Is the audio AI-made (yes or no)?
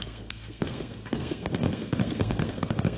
yes